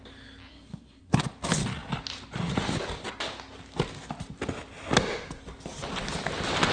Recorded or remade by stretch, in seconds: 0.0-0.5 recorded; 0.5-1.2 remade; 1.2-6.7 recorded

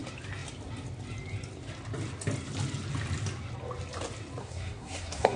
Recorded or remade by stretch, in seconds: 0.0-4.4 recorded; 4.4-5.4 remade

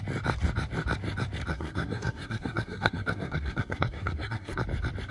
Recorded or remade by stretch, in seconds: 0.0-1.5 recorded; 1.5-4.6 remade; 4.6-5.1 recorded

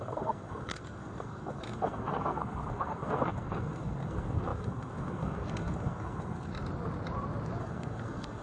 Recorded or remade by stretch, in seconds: 0.0-6.5 remade; 6.5-7.6 recorded; 7.6-8.4 remade

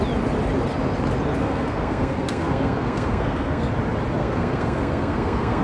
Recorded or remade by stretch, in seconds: 0.0-1.4 recorded; 1.4-3.7 remade; 3.7-4.2 recorded; 4.2-5.6 remade

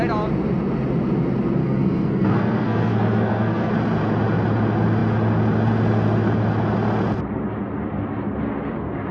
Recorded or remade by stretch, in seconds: 0.0-1.6 recorded; 1.6-3.7 remade; 3.7-9.1 recorded